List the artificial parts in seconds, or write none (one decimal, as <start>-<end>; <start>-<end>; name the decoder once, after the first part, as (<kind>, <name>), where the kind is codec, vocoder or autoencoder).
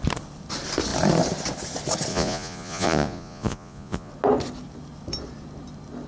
2.1-4.1 (vocoder, Vocos)